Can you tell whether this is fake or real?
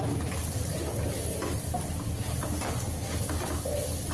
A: real